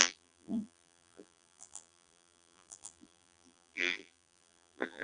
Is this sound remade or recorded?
remade